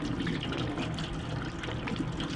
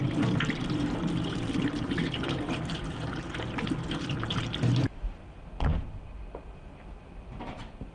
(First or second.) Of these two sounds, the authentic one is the first